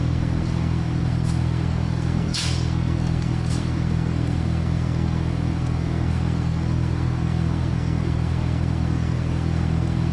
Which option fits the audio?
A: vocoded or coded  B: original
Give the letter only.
A